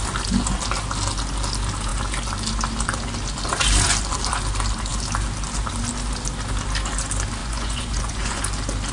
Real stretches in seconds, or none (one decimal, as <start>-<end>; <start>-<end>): 0.0-7.4; 8.4-8.9